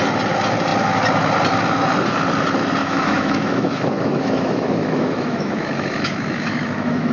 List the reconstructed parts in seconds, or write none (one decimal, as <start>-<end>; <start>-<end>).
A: 2.8-7.1

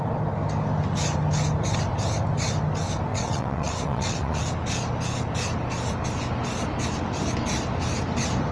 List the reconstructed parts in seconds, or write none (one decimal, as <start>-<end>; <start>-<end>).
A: 3.1-4.4

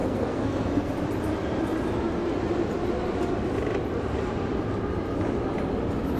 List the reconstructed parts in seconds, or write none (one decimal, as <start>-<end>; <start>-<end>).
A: 0.0-0.9

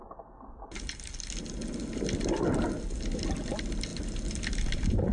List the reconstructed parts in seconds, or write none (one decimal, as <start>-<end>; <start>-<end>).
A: none

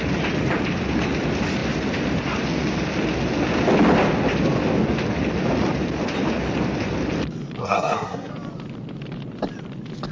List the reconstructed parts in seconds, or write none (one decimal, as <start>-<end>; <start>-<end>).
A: 7.6-8.3

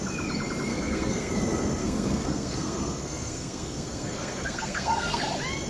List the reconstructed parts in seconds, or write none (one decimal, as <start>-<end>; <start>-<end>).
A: 0.7-1.3; 1.8-5.2

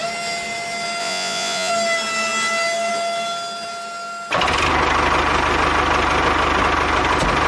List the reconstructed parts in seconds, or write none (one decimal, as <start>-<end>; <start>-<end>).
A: 1.0-1.7

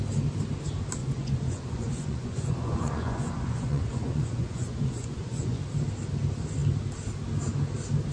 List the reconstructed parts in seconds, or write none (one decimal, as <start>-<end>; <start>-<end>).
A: 1.0-5.6